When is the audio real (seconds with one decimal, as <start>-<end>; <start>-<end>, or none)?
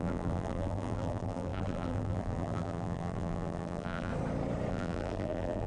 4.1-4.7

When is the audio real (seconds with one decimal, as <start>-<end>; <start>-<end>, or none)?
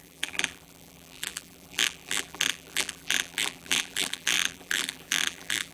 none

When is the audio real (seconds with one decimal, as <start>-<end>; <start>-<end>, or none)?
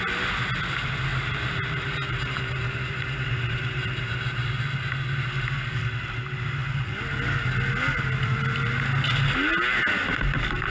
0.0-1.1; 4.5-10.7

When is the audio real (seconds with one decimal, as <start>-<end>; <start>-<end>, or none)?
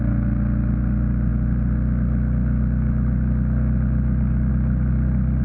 0.0-5.4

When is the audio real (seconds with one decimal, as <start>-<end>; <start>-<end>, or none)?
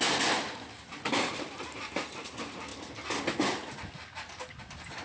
0.0-5.0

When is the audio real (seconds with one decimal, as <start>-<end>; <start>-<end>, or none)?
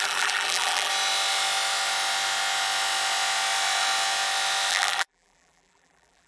0.9-4.7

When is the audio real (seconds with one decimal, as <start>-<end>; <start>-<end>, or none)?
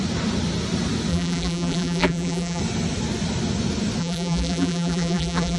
0.0-1.1; 2.6-4.0